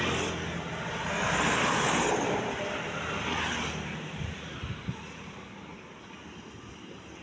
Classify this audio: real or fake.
real